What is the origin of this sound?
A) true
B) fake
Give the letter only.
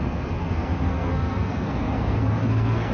B